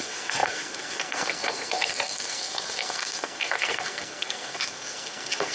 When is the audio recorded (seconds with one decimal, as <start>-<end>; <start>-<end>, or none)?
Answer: none